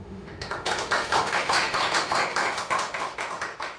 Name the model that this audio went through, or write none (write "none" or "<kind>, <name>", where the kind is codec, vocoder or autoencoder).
autoencoder, DAC-VAE